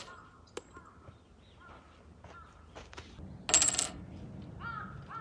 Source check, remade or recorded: recorded